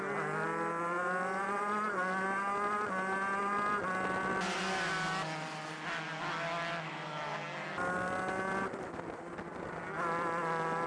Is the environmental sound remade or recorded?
recorded